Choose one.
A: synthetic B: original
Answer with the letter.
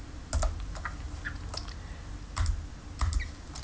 B